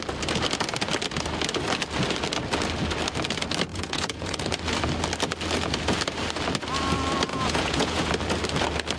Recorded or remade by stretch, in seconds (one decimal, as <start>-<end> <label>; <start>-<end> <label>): 0.0-3.7 recorded; 3.7-4.4 remade; 4.4-7.3 recorded; 7.3-8.1 remade; 8.1-9.0 recorded